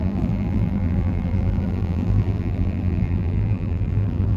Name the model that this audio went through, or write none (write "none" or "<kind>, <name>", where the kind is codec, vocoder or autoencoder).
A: vocoder, BigVGAN v2